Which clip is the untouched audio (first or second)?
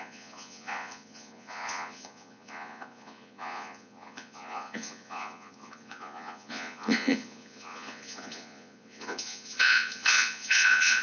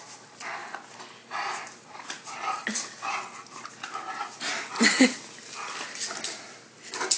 second